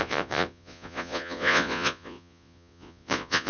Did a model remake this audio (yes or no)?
yes